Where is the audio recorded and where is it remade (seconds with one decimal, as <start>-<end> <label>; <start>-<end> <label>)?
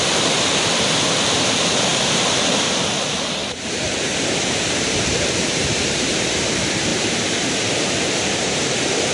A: 0.0-9.1 remade